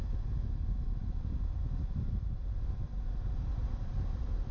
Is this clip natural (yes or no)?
yes